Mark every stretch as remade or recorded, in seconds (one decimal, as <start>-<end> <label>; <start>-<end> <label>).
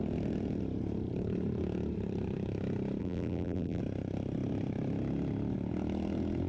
0.0-3.0 recorded; 3.0-3.8 remade; 3.8-6.5 recorded